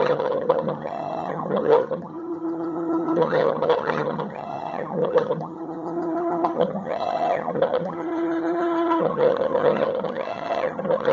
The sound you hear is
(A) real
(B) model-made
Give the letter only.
B